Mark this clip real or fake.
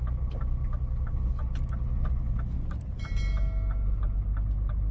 real